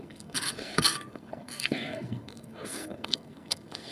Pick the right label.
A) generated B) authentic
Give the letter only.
A